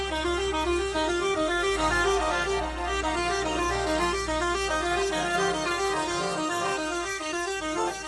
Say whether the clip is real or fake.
fake